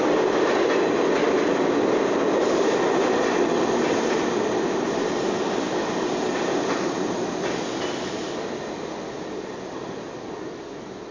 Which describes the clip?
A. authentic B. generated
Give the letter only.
A